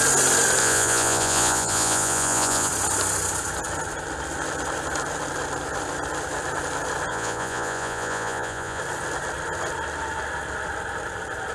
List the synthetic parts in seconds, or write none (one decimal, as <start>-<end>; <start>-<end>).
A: 0.6-2.7; 7.1-8.8